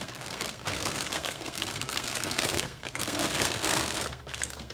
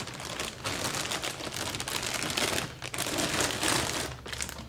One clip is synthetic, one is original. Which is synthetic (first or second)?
first